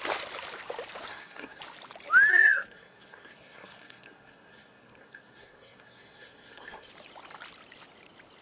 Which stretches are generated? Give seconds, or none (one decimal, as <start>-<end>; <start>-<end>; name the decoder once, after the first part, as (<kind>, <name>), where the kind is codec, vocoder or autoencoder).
1.1-1.6 (codec, SNAC); 2.3-6.9